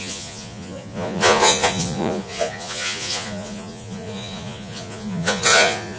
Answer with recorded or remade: remade